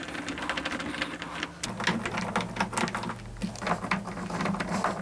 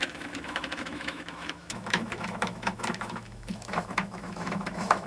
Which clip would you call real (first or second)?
first